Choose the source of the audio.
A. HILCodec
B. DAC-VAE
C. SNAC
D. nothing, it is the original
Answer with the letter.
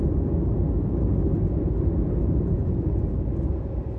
D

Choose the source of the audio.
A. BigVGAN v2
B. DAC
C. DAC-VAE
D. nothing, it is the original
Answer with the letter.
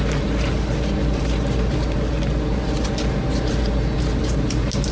D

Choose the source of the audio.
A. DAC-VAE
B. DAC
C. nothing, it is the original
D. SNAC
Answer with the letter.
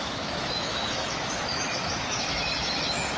A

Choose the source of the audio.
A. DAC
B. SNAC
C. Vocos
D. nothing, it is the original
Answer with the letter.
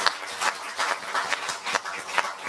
D